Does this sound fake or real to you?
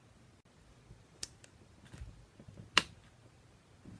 real